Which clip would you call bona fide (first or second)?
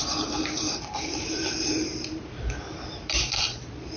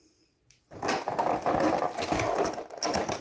second